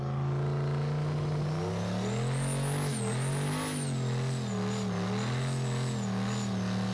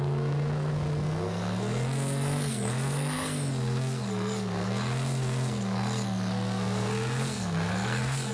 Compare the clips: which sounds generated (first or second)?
second